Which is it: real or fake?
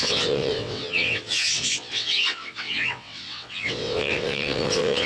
fake